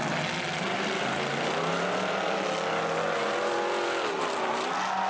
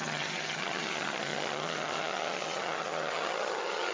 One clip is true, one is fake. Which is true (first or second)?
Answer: first